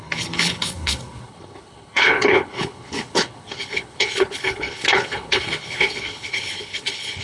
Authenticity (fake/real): fake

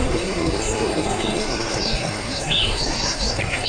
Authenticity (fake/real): fake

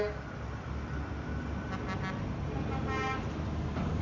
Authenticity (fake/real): real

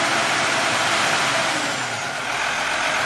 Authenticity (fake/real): real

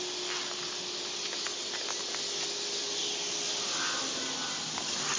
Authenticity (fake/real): real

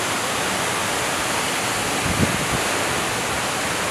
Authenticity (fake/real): real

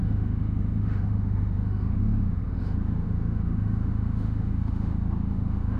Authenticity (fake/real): fake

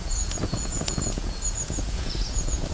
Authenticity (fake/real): fake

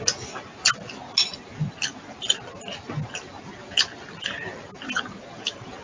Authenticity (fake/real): real